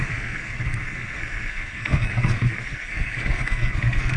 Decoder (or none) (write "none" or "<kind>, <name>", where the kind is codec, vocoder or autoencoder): codec, SNAC